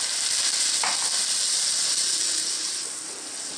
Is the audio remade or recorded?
recorded